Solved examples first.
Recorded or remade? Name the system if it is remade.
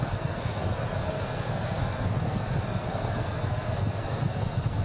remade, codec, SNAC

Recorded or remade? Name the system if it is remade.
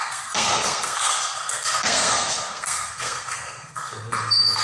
remade, codec, SNAC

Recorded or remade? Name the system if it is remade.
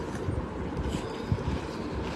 recorded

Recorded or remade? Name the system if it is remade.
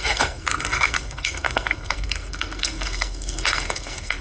remade, codec, SNAC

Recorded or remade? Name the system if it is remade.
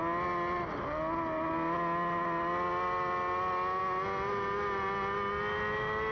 recorded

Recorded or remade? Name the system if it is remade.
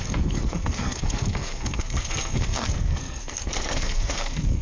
remade, codec, SNAC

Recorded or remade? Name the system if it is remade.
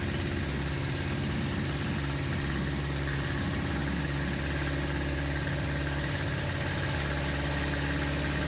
recorded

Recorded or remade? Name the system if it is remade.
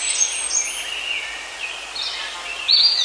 recorded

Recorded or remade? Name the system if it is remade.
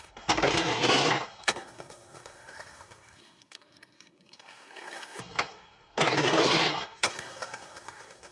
remade, codec, SNAC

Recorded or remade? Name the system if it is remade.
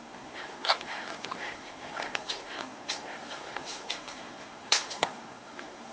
remade, codec, SNAC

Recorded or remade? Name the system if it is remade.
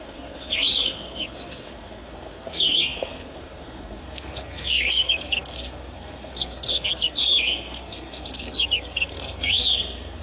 remade, codec, SNAC